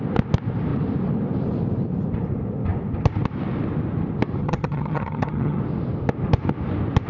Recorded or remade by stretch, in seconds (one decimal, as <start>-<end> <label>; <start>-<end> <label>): 0.0-4.4 recorded; 4.4-5.6 remade; 5.6-7.1 recorded